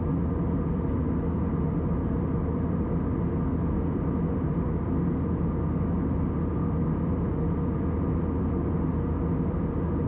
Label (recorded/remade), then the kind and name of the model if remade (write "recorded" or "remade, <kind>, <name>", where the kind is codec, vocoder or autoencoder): recorded